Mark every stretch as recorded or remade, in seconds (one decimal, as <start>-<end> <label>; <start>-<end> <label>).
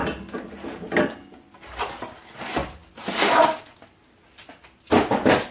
0.0-1.0 remade; 1.0-2.8 recorded; 2.8-3.7 remade; 3.7-5.5 recorded